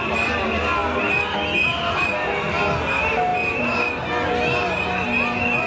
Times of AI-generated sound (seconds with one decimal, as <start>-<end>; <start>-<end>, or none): none